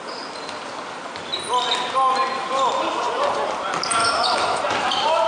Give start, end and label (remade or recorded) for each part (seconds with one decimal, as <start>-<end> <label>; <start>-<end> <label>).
0.0-4.0 recorded; 4.0-4.6 remade; 4.6-5.3 recorded